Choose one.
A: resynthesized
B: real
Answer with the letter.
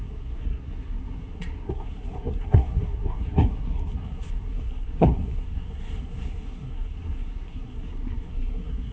A